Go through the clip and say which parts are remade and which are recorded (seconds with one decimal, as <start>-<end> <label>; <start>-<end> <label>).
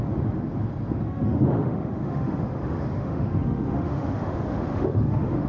0.0-1.0 recorded; 1.0-5.5 remade